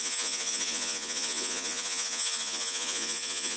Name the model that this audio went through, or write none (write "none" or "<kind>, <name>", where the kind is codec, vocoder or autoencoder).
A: vocoder, Vocos